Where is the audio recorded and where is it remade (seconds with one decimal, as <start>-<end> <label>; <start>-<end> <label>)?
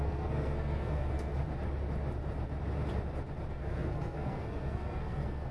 0.0-1.3 remade; 1.3-3.5 recorded; 3.5-5.5 remade